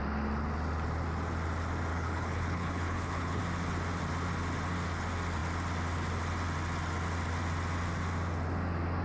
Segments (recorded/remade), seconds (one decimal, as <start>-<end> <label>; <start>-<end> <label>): 0.0-1.9 recorded; 1.9-3.4 remade; 3.4-9.0 recorded